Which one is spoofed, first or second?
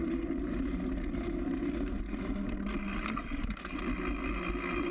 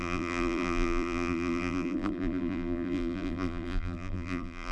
second